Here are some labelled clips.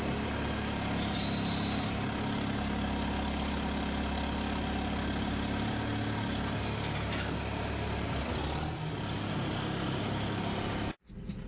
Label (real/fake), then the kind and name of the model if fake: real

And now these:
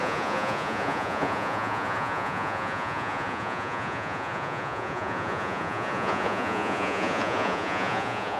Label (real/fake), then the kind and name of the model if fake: fake, vocoder, Vocos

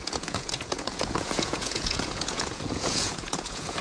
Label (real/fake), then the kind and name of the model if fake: fake, vocoder, Vocos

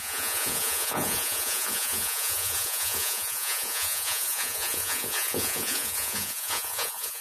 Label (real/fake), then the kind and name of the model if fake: fake, vocoder, Vocos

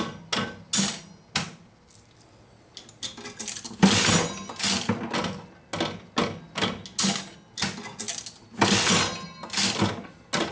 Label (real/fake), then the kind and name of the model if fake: real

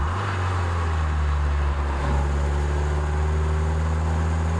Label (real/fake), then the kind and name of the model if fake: real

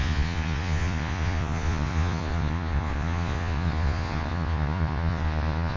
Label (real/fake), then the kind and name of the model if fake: fake, vocoder, Vocos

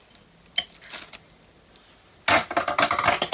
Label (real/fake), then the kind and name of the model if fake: real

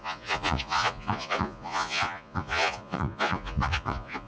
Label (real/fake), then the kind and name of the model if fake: fake, vocoder, Vocos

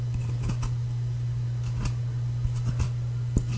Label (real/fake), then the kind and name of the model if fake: real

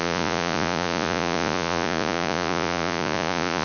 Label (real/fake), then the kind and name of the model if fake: fake, vocoder, Vocos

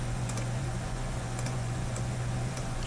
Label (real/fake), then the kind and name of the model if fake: fake, vocoder, Vocos